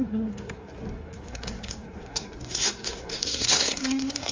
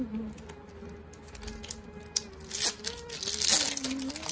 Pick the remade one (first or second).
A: first